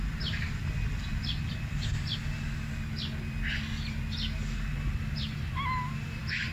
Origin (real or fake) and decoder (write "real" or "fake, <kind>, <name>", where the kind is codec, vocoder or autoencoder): real